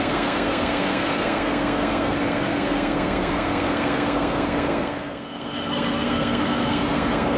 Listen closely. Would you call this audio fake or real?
fake